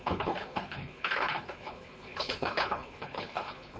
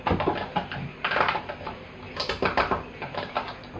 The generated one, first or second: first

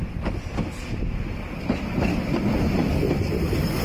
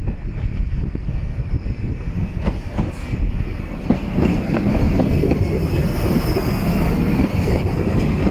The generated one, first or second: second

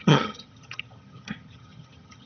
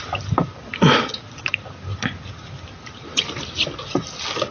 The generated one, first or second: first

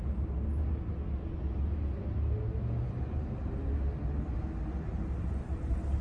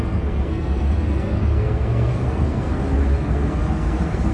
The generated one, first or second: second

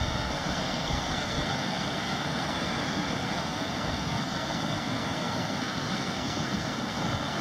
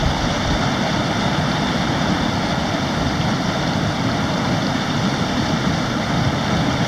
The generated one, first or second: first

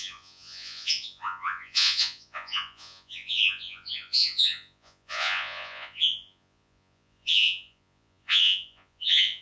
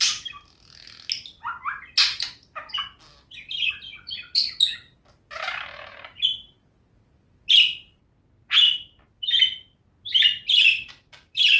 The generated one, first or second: first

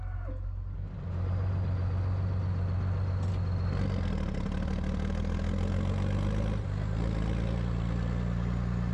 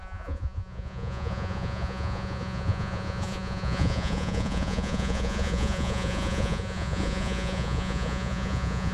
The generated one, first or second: second